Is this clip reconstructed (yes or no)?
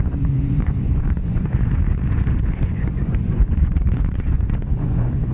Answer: yes